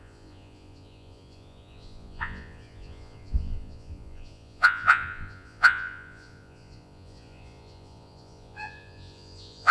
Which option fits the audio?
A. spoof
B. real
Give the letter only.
A